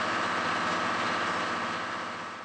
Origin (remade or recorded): recorded